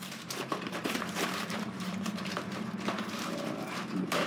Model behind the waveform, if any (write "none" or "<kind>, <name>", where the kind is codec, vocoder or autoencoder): vocoder, BigVGAN v2